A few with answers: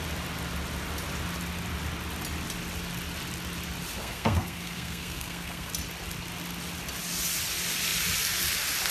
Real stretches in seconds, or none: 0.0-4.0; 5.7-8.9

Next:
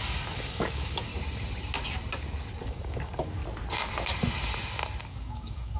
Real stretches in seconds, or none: 1.1-2.6; 3.4-5.0